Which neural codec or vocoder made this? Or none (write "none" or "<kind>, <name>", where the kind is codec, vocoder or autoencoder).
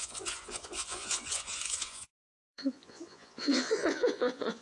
vocoder, Vocos